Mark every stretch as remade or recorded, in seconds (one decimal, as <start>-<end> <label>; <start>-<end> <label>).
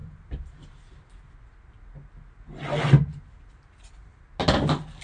0.0-5.0 recorded